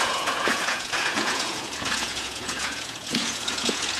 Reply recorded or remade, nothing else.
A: remade